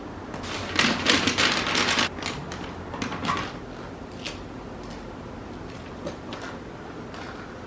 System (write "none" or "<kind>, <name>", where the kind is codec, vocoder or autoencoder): none